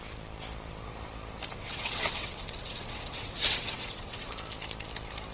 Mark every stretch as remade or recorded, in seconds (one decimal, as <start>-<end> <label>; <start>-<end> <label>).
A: 0.0-1.5 recorded; 1.5-4.3 remade; 4.3-5.3 recorded